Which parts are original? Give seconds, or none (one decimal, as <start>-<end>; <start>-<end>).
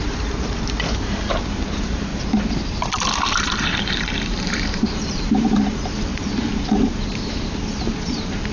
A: 2.1-3.4